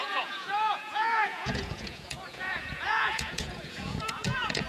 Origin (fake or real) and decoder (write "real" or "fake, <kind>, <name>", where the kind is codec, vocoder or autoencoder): fake, vocoder, Vocos